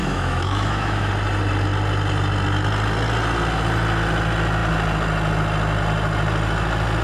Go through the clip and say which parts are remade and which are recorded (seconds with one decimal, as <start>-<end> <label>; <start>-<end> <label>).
0.0-1.1 remade; 1.1-7.0 recorded